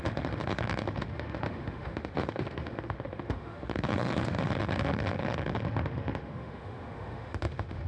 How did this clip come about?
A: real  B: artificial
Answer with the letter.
B